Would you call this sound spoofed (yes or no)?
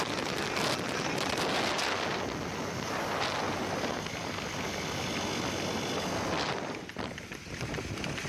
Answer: no